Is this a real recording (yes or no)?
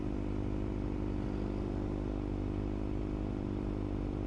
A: yes